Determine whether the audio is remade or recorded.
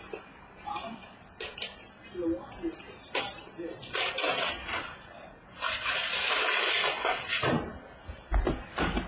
remade